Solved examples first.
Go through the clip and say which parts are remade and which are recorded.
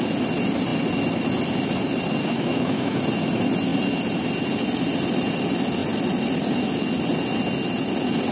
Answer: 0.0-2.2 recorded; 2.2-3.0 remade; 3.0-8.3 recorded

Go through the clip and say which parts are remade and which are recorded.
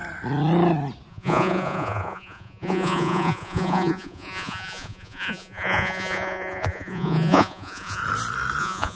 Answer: 0.0-1.1 recorded; 1.1-8.0 remade; 8.0-8.6 recorded; 8.6-9.0 remade